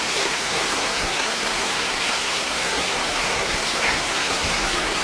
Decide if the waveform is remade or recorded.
remade